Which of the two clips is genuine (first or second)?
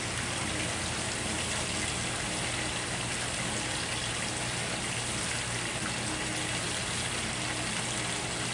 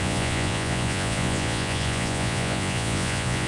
first